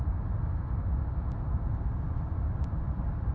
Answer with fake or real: real